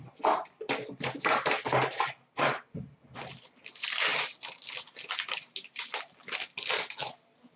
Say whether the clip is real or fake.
real